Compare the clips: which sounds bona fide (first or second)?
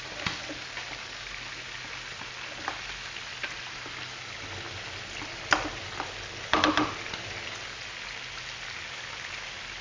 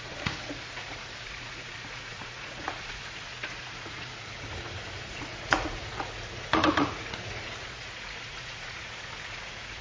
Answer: first